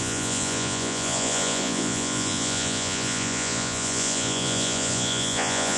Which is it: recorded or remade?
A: remade